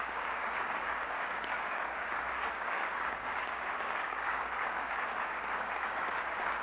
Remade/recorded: remade